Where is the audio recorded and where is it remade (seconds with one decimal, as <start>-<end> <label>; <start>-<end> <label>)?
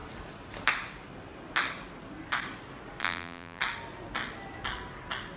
0.0-3.0 recorded; 3.0-3.6 remade; 3.6-5.4 recorded